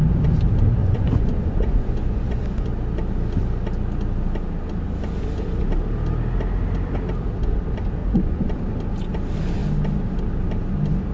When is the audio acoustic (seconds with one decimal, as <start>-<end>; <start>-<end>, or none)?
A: 0.0-0.8; 2.7-8.0; 8.6-11.1